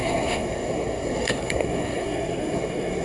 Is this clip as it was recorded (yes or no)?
no